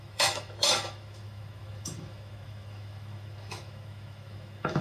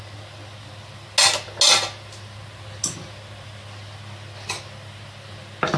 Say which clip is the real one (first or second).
second